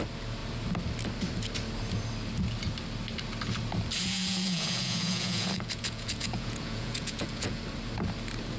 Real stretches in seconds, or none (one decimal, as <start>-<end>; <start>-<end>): 0.0-4.0; 7.6-8.6